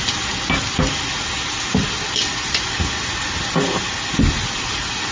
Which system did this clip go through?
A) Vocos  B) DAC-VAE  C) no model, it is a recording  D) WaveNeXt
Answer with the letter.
C